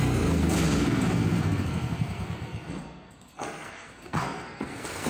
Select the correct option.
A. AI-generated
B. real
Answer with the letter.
A